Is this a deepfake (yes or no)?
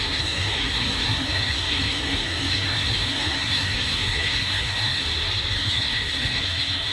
yes